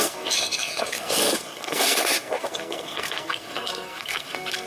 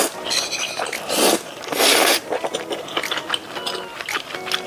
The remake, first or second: first